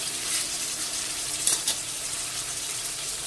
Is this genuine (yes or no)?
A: no